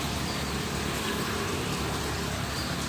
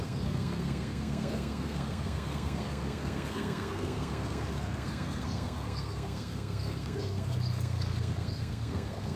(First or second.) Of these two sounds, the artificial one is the second